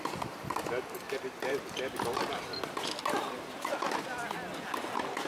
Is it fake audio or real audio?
real